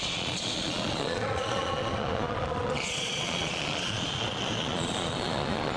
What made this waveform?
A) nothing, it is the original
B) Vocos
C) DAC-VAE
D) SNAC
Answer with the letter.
B